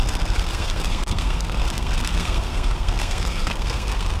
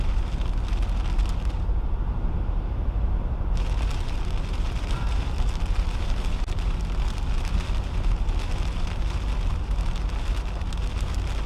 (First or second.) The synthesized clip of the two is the first